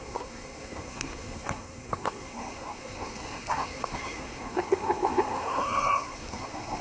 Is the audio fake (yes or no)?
yes